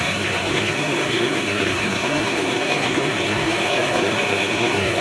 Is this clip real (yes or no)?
no